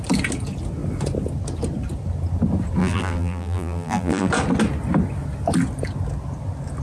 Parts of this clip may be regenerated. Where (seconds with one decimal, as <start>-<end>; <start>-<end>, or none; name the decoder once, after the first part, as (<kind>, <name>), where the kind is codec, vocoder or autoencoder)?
2.8-4.3 (vocoder, BigVGAN v2)